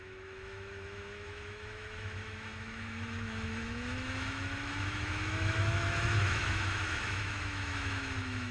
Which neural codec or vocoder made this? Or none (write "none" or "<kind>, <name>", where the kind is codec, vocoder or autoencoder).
autoencoder, DAC-VAE